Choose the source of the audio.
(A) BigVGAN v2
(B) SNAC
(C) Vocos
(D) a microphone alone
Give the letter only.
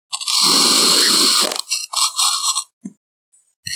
D